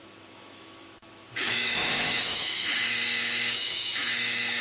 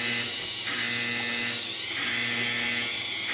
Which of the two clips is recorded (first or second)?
second